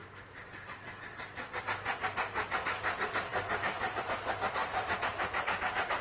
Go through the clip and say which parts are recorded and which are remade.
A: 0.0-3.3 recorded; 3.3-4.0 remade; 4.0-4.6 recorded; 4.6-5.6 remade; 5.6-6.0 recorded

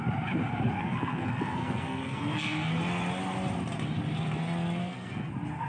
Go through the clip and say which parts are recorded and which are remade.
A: 0.0-0.8 recorded; 0.8-2.7 remade; 2.7-4.8 recorded; 4.8-5.3 remade; 5.3-5.7 recorded

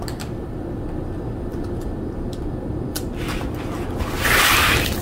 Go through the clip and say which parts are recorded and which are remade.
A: 0.0-5.0 recorded

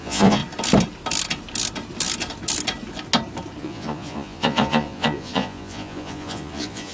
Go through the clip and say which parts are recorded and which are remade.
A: 0.0-0.4 remade; 0.4-3.6 recorded; 3.6-6.9 remade

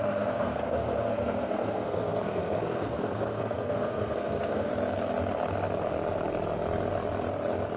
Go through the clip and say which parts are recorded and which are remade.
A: 0.0-4.7 remade; 4.7-7.8 recorded

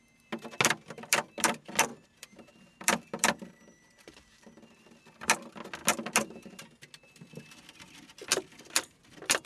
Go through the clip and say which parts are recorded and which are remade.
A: 0.0-9.5 recorded